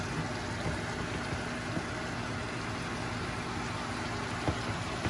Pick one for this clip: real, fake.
real